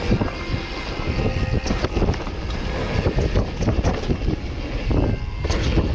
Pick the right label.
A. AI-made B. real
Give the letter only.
B